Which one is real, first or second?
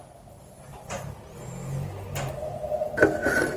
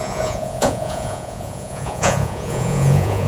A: first